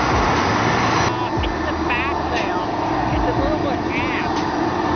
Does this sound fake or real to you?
real